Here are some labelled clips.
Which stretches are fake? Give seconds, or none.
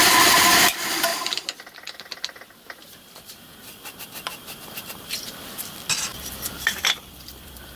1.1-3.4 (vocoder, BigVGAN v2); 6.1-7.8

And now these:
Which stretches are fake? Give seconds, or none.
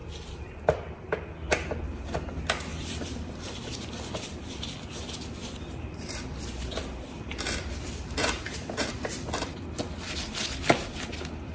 0.0-1.2 (vocoder, BigVGAN v2); 2.7-4.6; 5.4-9.8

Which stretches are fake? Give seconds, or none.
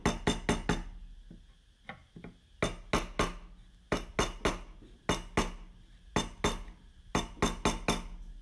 none